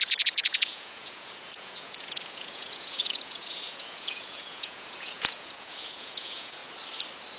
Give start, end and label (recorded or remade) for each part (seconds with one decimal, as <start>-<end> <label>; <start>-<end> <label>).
0.0-6.6 remade; 6.6-7.4 recorded